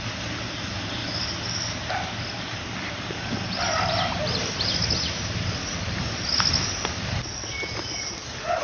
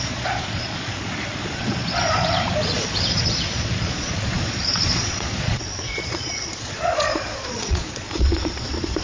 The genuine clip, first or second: first